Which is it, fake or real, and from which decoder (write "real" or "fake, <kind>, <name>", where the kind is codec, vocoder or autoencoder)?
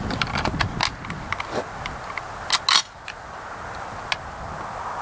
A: real